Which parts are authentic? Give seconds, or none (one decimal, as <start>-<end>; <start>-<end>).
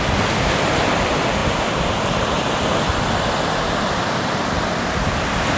0.0-5.6